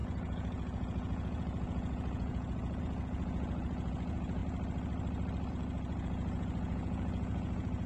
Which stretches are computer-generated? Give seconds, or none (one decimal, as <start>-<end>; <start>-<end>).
0.0-4.4; 5.5-7.9